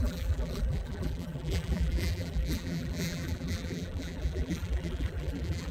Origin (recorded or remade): remade